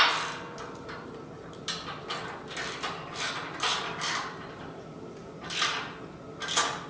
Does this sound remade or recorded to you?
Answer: recorded